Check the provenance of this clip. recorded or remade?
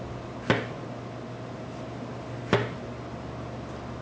recorded